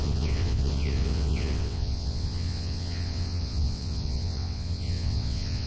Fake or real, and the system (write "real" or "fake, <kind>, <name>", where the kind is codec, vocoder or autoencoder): fake, vocoder, WaveNeXt